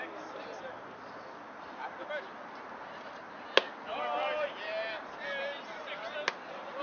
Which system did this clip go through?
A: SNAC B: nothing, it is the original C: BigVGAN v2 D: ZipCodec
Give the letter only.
B